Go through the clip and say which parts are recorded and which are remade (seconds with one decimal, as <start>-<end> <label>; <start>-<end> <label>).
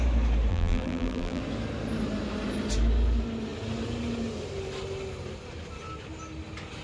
0.0-0.5 recorded; 0.5-1.4 remade; 1.4-6.8 recorded